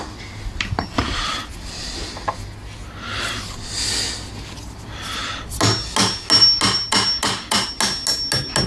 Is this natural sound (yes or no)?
yes